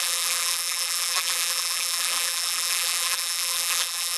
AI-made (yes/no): yes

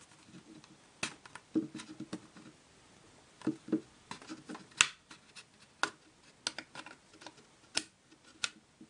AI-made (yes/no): no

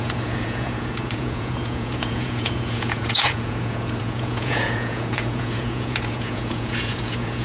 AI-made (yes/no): yes